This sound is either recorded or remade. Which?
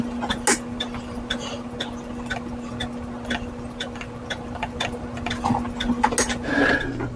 recorded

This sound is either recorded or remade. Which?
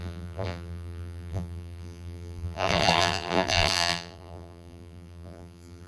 remade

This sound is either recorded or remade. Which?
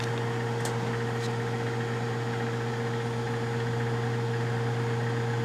recorded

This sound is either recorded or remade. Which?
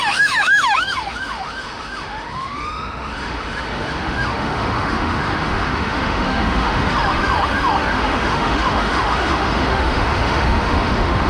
remade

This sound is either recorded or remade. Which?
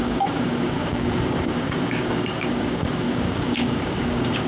remade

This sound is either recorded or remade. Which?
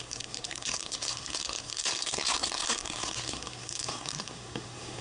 remade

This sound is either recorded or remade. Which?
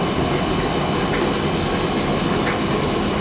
recorded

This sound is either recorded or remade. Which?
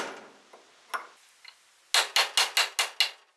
recorded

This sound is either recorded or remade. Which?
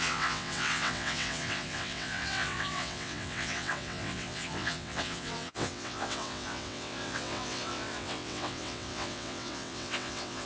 remade